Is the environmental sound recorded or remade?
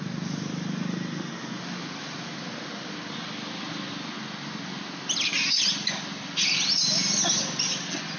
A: recorded